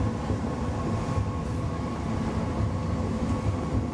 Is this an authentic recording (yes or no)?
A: yes